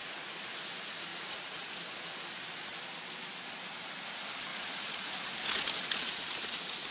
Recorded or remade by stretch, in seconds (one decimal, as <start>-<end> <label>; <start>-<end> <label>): 0.0-0.7 remade; 0.7-1.1 recorded; 1.1-1.8 remade; 1.8-4.5 recorded; 4.5-6.9 remade